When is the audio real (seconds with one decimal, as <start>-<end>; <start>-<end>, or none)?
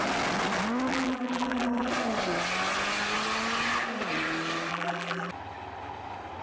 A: 0.0-0.9; 1.9-4.7; 5.3-6.4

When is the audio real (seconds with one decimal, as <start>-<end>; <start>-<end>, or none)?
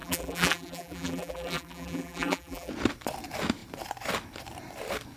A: 2.7-5.2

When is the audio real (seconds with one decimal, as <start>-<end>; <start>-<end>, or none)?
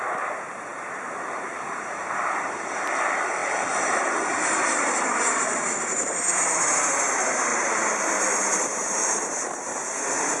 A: 7.5-8.4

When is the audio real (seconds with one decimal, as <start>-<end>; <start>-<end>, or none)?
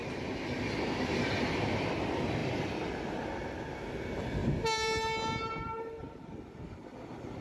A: 0.0-2.4; 4.0-4.4; 6.2-7.4